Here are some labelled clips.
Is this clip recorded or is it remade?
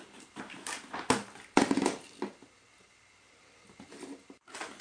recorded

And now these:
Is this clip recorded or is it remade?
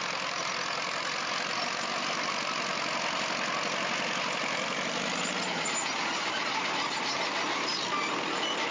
recorded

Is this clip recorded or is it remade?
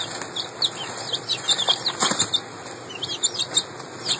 recorded